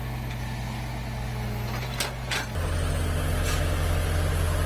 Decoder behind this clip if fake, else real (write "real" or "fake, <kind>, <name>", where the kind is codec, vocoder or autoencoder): real